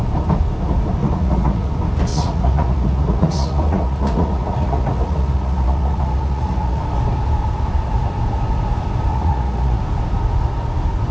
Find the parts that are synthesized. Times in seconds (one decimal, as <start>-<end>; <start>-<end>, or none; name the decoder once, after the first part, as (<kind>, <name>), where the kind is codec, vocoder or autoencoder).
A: 1.0-1.7 (vocoder, Vocos); 2.1-6.8; 9.1-9.8